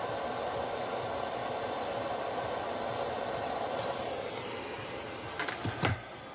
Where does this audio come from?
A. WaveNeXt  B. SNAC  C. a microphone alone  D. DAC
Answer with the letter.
C